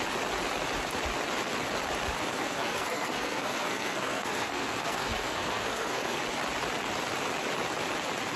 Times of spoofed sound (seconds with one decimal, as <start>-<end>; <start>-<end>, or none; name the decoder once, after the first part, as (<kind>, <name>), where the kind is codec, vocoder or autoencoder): 2.3-6.2 (codec, SNAC)